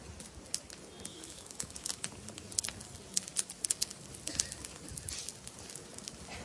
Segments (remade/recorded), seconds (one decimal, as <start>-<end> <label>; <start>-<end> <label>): 0.0-1.1 recorded; 1.1-2.1 remade; 2.1-6.4 recorded